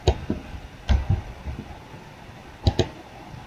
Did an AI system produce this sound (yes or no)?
no